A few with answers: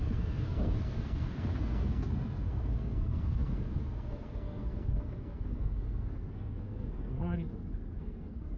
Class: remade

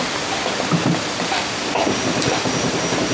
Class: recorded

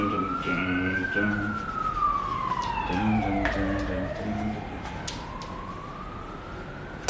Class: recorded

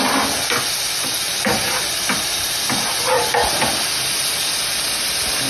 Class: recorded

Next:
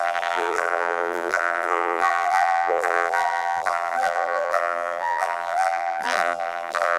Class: remade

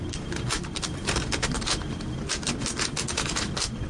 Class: recorded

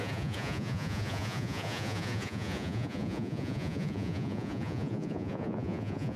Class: remade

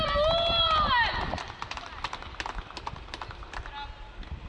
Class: recorded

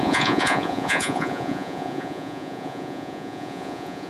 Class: remade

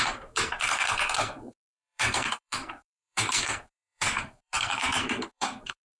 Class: remade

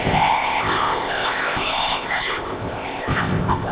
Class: remade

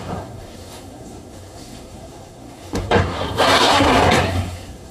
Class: remade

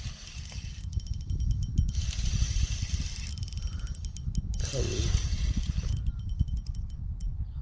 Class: remade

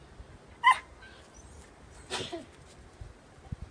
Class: recorded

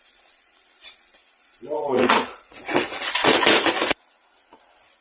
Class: remade